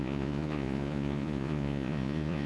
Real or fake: fake